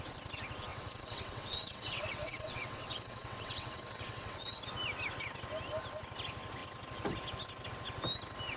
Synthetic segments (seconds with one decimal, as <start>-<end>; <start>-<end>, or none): 0.7-4.6